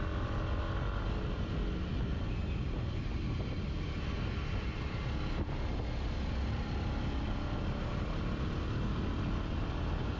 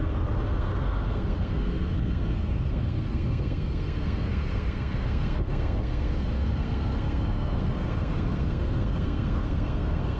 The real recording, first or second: first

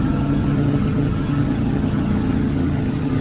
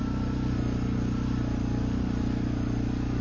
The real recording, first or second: second